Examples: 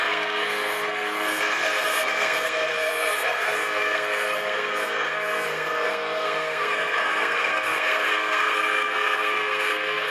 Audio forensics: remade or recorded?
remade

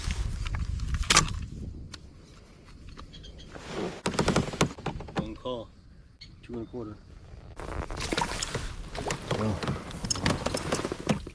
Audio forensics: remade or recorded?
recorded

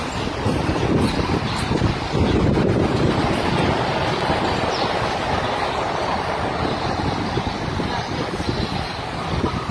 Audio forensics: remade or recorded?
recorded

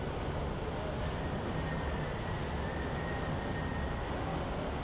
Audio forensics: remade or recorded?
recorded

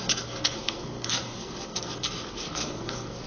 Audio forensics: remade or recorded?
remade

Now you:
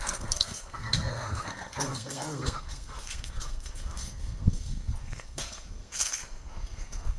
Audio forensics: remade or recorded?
remade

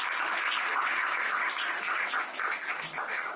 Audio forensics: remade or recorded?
recorded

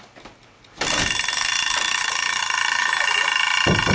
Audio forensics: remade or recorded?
recorded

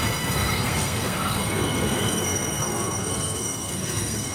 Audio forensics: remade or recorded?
remade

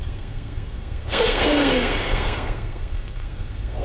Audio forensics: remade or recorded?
remade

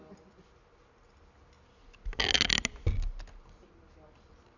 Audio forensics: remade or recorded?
recorded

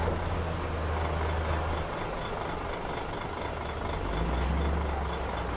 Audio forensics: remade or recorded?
recorded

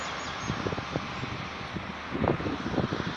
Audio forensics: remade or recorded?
recorded